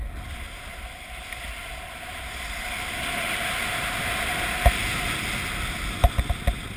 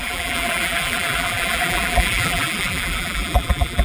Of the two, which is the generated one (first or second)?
second